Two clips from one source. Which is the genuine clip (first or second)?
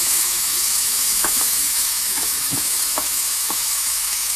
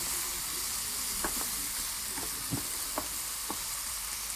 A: second